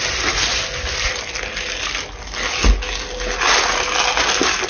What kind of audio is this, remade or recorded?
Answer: recorded